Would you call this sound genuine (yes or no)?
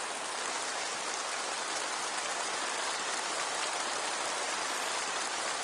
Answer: no